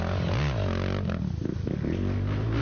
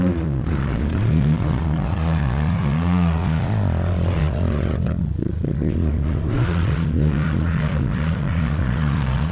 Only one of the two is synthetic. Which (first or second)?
second